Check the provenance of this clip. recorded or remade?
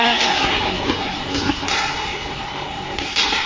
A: remade